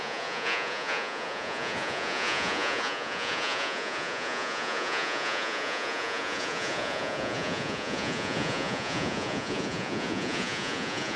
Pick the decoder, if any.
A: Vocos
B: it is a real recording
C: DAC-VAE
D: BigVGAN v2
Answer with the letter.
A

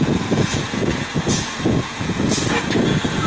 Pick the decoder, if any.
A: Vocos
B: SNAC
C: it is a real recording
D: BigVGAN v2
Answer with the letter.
A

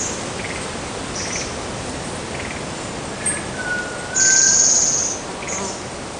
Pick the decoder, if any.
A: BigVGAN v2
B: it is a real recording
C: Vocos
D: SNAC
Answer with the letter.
B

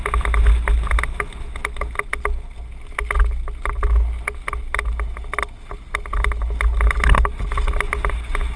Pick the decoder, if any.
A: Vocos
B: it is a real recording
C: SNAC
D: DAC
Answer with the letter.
B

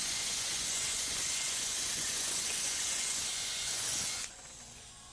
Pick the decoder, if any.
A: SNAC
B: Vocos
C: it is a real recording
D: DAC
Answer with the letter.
B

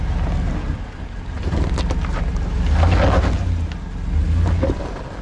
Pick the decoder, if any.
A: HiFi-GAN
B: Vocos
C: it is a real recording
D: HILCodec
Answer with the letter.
C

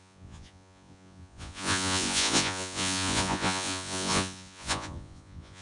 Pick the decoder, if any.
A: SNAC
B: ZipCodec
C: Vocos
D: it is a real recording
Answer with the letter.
C